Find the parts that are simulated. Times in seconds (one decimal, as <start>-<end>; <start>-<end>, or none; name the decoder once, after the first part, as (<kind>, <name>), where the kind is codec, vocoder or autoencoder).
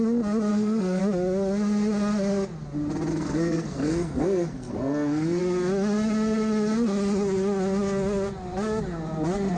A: 0.5-1.0 (codec, SNAC); 3.1-5.4